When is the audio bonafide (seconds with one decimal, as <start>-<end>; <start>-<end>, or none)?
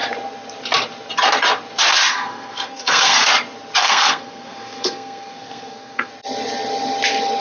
0.0-2.1; 3.2-3.8; 6.1-7.4